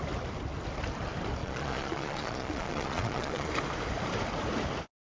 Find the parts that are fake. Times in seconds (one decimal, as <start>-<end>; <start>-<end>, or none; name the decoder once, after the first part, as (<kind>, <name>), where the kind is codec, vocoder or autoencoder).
1.4-3.5 (vocoder, Vocos)